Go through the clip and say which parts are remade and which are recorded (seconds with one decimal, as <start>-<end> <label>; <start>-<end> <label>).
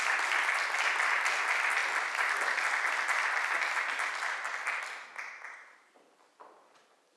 0.0-7.2 recorded